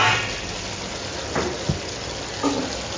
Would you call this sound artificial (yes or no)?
no